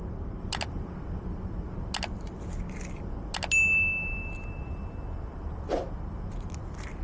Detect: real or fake real